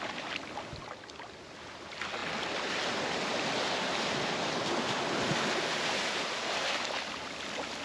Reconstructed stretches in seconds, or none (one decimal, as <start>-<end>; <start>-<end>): none